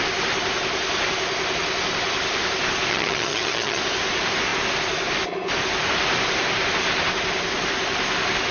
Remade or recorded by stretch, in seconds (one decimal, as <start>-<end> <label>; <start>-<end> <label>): 0.0-2.9 recorded; 2.9-3.8 remade; 3.8-8.5 recorded